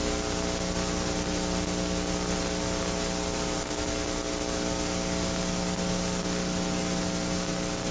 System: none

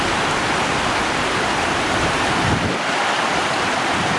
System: none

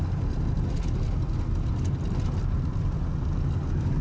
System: none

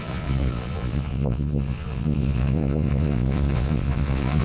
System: vocoder, Vocos